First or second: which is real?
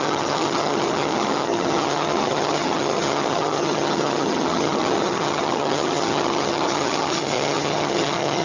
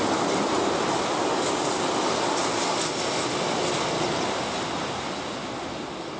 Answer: second